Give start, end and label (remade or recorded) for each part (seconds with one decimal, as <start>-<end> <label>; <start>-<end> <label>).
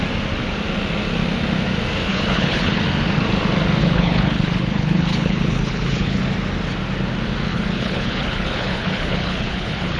0.0-2.1 recorded; 2.1-2.8 remade; 2.8-3.8 recorded; 3.8-6.2 remade; 6.2-7.5 recorded; 7.5-10.0 remade